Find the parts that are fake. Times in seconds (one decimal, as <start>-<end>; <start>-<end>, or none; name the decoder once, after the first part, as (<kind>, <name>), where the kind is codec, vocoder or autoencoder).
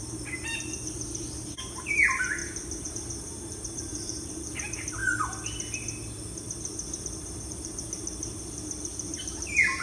0.0-5.0 (vocoder, BigVGAN v2); 7.0-8.1; 9.2-9.8